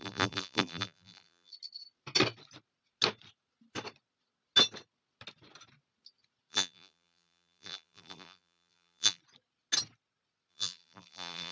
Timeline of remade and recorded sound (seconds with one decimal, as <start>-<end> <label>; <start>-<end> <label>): 0.0-1.5 remade; 1.5-6.5 recorded; 6.5-9.2 remade; 9.2-10.5 recorded; 10.5-11.5 remade